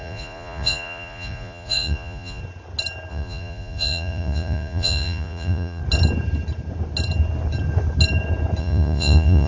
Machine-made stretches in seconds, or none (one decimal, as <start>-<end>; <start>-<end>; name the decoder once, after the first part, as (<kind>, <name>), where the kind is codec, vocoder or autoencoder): 0.0-2.4 (vocoder, Vocos); 3.1-5.8; 8.6-9.5